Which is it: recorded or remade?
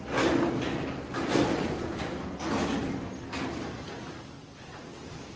recorded